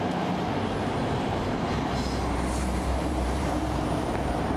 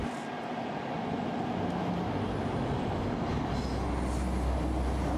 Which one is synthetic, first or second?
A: first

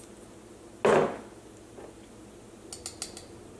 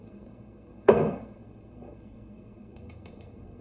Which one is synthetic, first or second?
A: second